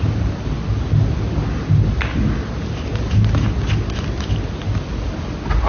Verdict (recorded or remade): recorded